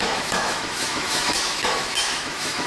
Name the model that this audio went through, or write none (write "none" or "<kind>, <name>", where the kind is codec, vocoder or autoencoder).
autoencoder, DAC-VAE